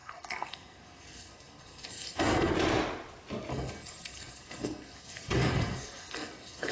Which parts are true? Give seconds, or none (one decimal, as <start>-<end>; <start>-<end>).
2.5-3.5